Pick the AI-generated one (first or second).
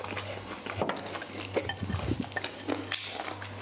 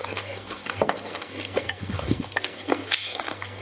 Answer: second